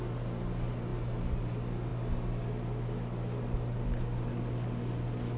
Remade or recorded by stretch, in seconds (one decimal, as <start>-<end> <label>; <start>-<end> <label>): 0.0-5.4 recorded